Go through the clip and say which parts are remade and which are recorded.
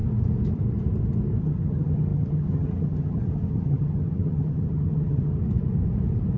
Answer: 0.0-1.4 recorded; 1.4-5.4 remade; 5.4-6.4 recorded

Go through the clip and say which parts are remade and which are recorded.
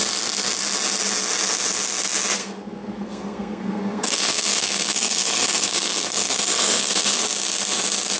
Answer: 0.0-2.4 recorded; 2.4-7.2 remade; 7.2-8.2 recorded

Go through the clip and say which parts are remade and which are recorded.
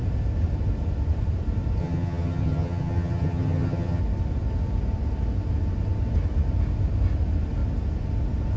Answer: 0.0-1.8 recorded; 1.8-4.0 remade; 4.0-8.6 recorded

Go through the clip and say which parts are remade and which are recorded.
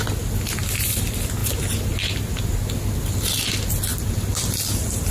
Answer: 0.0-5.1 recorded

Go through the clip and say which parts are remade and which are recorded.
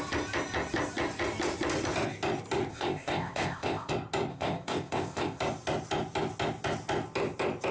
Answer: 0.0-2.7 recorded; 2.7-3.9 remade; 3.9-4.3 recorded; 4.3-5.4 remade; 5.4-7.7 recorded